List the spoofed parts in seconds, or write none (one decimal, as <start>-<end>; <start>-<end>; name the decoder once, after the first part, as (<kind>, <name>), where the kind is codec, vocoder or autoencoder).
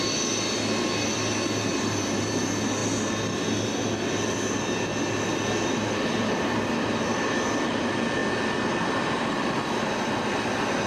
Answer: 1.7-2.2 (vocoder, BigVGAN v2)